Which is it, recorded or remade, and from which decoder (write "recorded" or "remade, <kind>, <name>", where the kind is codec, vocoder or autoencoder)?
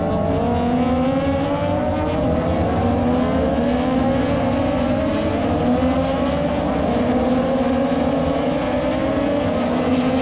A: recorded